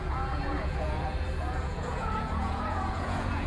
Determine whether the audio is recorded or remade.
remade